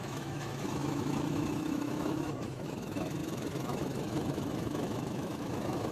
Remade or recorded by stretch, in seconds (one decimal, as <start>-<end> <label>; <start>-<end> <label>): 0.0-5.9 remade